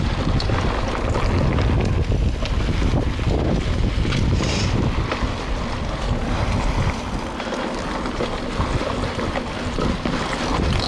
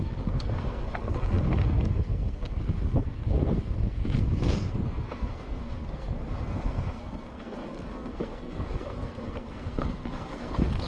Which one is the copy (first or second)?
second